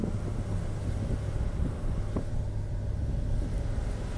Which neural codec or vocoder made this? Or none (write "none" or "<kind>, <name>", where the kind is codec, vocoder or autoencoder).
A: none